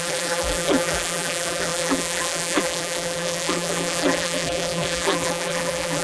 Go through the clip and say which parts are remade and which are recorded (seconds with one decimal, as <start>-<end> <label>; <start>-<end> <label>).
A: 0.0-6.0 remade